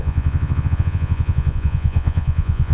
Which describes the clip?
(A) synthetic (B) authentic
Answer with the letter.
A